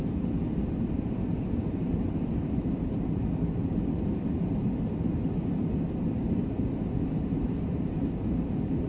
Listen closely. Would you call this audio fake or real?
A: fake